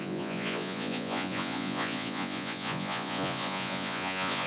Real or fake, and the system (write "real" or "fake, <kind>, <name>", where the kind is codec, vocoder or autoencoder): fake, vocoder, Vocos